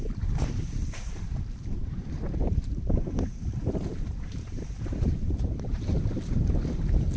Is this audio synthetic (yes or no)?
yes